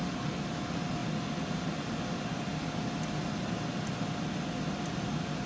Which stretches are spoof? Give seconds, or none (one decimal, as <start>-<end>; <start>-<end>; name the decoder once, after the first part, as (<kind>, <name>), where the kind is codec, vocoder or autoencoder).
none